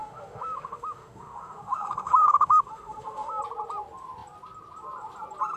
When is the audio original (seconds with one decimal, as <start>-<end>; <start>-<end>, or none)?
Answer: 3.4-5.6